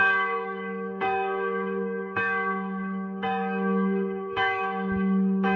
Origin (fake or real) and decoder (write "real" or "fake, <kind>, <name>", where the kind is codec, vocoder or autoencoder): fake, codec, DAC